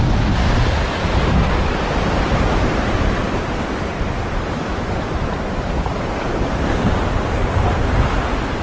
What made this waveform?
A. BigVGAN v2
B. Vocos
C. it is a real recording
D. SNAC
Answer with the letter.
C